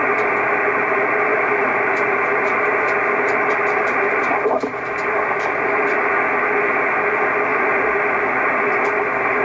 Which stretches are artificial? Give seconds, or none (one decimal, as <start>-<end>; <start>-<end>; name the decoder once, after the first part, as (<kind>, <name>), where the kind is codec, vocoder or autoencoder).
1.3-5.8 (vocoder, BigVGAN v2); 7.5-8.3